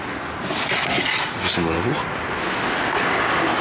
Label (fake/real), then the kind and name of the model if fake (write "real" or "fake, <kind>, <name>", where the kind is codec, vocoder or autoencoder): real